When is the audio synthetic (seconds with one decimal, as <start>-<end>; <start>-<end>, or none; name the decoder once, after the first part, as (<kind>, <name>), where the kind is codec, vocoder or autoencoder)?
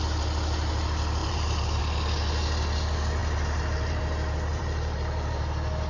1.2-1.8 (vocoder, BigVGAN v2); 3.2-4.0; 4.5-5.4